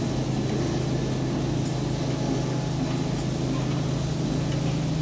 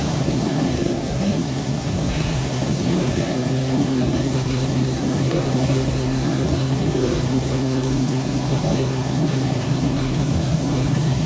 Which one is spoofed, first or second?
second